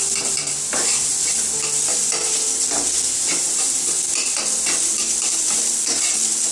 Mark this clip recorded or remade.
remade